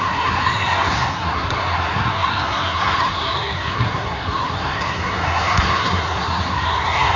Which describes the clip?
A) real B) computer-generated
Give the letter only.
B